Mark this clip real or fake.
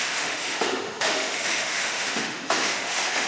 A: fake